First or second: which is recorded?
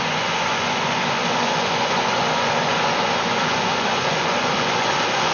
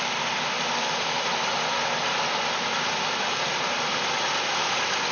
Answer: second